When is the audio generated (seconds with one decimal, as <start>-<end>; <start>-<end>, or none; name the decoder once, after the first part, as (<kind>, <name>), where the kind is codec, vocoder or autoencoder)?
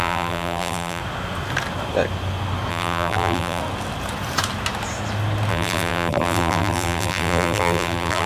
0.0-1.0 (vocoder, BigVGAN v2); 2.7-3.6; 5.5-8.3